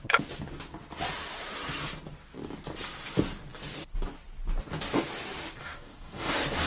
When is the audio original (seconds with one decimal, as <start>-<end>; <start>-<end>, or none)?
0.0-5.6; 6.3-6.7